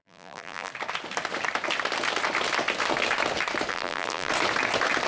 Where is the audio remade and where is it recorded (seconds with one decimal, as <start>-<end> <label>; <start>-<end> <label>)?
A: 0.0-0.7 remade; 0.7-3.7 recorded; 3.7-4.3 remade; 4.3-5.1 recorded